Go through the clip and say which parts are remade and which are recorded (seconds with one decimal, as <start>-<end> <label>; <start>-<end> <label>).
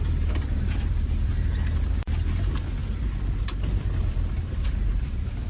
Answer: 0.0-5.5 remade